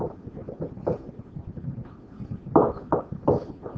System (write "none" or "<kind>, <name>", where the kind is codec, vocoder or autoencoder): none